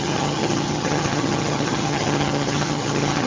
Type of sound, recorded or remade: remade